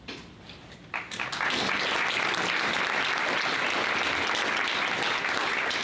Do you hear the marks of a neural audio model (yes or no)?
no